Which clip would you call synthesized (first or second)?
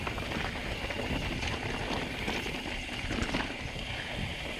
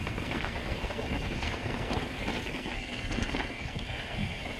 second